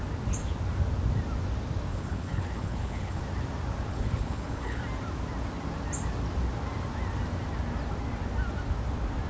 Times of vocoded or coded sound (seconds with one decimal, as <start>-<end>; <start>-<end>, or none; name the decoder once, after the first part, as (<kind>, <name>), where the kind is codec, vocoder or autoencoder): 1.9-3.2 (codec, HILCodec); 3.9-4.8